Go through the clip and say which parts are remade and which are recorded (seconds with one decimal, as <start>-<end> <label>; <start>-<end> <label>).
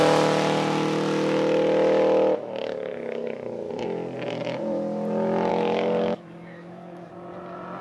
0.0-2.6 recorded; 2.6-3.7 remade; 3.7-5.5 recorded; 5.5-7.1 remade; 7.1-7.8 recorded